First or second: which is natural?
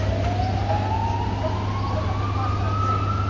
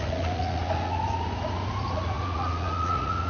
first